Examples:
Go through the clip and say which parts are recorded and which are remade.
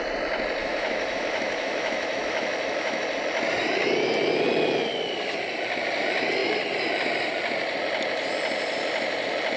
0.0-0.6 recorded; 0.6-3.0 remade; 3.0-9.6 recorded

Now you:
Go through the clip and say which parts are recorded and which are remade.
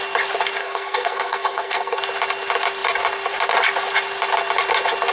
0.0-0.6 recorded; 0.6-2.0 remade; 2.0-5.1 recorded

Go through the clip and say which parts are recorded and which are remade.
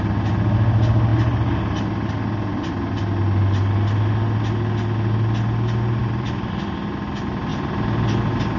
0.0-6.0 recorded; 6.0-6.6 remade; 6.6-8.6 recorded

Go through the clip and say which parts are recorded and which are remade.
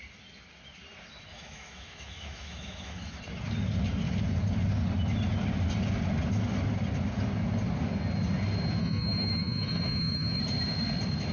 0.0-1.3 recorded; 1.3-3.2 remade; 3.2-8.8 recorded; 8.8-10.4 remade; 10.4-11.3 recorded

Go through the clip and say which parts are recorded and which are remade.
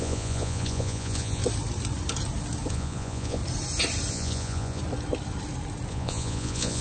0.0-1.4 remade; 1.4-2.7 recorded; 2.7-3.4 remade; 3.4-4.1 recorded; 4.1-4.8 remade; 4.8-5.9 recorded; 5.9-6.8 remade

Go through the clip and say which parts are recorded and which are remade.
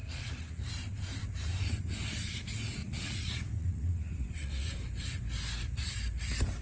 0.0-0.7 remade; 0.7-2.8 recorded; 2.8-4.7 remade; 4.7-6.6 recorded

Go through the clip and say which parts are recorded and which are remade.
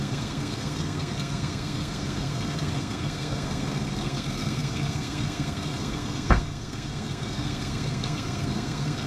0.0-9.1 remade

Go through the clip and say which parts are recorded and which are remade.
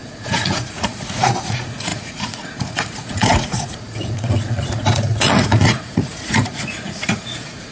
0.0-7.7 remade